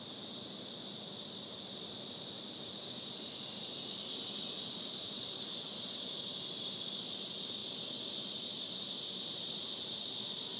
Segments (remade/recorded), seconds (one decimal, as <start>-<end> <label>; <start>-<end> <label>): 0.0-10.6 recorded